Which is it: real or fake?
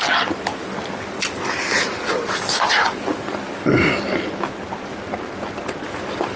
real